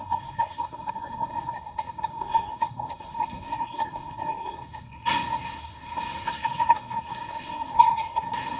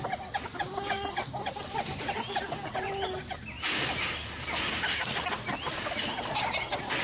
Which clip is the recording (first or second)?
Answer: second